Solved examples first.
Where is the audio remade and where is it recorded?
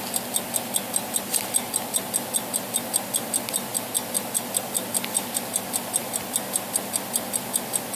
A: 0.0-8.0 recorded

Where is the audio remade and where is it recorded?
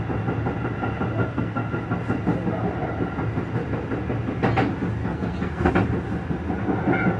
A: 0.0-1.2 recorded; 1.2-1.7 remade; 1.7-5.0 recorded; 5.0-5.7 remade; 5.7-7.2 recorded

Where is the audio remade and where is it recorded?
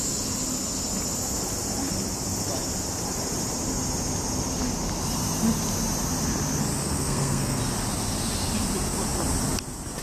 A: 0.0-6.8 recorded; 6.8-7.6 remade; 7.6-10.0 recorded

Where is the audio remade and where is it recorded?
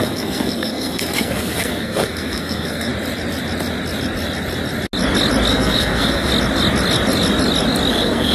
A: 0.0-2.9 remade; 2.9-5.5 recorded; 5.5-6.3 remade; 6.3-7.9 recorded; 7.9-8.3 remade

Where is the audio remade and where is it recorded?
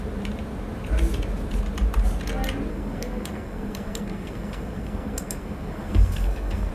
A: 0.0-2.7 recorded; 2.7-6.7 remade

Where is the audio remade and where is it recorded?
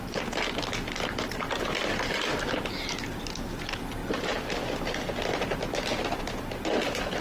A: 0.0-7.2 recorded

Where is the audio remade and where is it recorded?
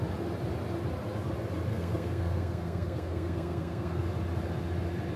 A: 0.0-1.7 recorded; 1.7-4.1 remade; 4.1-5.2 recorded